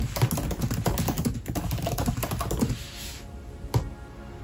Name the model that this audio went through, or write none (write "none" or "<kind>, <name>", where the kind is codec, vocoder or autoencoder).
none